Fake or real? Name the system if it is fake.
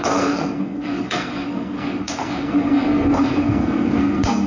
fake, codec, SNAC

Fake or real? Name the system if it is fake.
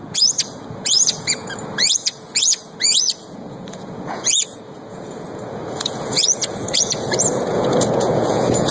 fake, vocoder, Vocos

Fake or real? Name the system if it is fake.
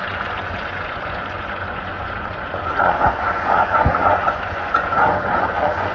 fake, vocoder, Vocos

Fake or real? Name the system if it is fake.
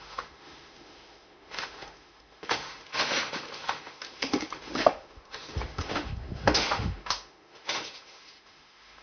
fake, autoencoder, DAC-VAE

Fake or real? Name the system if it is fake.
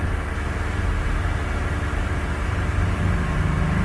real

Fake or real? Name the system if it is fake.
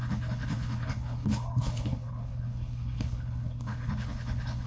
fake, codec, HILCodec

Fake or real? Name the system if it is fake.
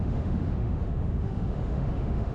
fake, autoencoder, DAC-VAE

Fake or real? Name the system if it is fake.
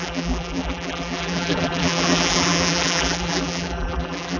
fake, vocoder, BigVGAN v2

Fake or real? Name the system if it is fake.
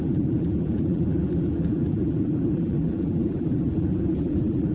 fake, vocoder, BigVGAN v2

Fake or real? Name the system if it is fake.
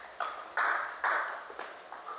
real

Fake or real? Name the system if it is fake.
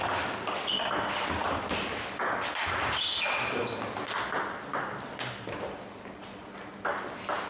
real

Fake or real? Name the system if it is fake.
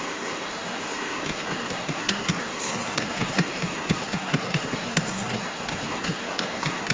fake, codec, SNAC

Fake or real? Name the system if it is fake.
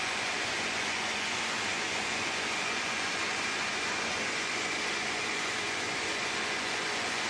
fake, vocoder, Vocos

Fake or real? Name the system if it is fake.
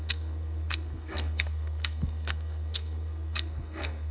fake, codec, SNAC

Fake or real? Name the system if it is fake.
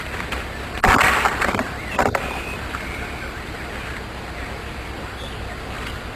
real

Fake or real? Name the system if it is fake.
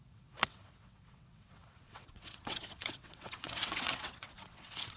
fake, vocoder, WaveNeXt